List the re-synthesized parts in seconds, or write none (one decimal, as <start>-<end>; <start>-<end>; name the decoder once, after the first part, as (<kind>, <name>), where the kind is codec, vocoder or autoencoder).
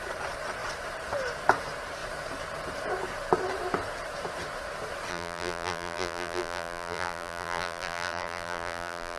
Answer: 5.1-9.2 (vocoder, BigVGAN v2)